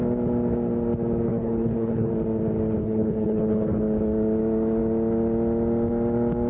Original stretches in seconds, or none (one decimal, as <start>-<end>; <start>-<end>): 0.0-1.3; 2.1-2.8; 3.8-6.5